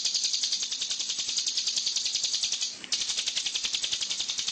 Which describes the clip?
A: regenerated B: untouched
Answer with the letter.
B